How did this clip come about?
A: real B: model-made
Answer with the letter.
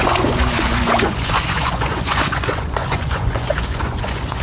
B